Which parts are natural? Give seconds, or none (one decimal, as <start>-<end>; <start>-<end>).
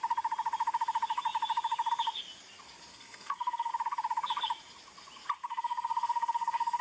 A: 0.0-2.9; 3.7-5.5